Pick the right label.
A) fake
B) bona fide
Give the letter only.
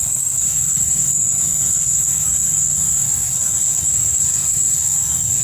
A